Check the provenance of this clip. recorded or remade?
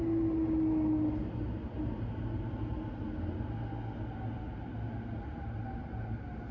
recorded